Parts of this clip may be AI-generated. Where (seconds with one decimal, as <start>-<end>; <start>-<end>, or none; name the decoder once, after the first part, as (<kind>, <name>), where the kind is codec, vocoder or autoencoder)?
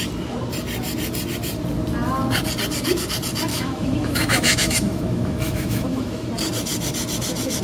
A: 3.5-6.3 (autoencoder, DAC-VAE)